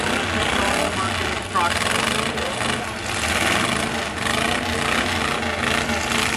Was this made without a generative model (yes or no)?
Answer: yes